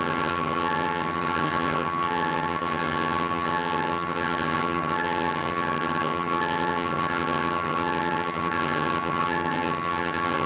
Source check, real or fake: fake